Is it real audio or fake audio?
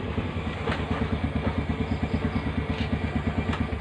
real